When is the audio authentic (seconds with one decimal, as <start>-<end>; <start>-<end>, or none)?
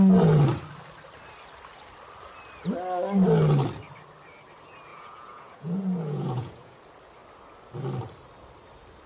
0.0-4.9; 6.8-9.1